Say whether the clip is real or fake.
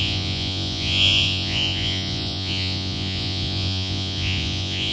fake